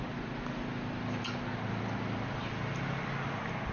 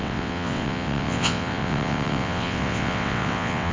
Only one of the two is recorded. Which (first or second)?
first